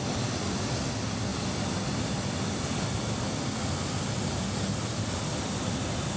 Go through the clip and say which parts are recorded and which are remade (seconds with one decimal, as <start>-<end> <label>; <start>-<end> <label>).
0.0-1.3 recorded; 1.3-5.0 remade; 5.0-6.2 recorded